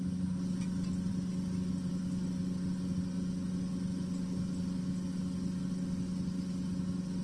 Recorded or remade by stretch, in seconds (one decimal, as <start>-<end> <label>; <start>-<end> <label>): 0.0-7.2 recorded